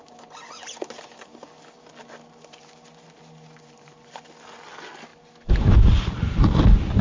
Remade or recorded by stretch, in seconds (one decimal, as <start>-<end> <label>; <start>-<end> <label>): 0.0-7.0 recorded